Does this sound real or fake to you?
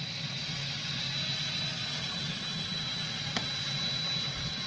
real